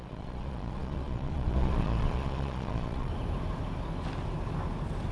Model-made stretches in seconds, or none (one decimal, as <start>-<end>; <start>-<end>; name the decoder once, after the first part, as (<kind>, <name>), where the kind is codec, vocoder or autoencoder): 0.0-3.1 (vocoder, Vocos)